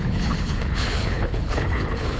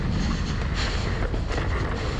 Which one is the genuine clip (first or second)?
second